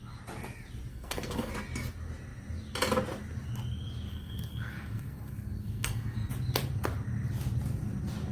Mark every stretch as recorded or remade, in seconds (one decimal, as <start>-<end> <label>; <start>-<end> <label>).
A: 0.0-0.9 recorded; 0.9-1.5 remade; 1.5-4.1 recorded; 4.1-6.3 remade; 6.3-8.3 recorded